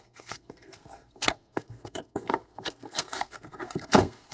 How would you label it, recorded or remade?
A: remade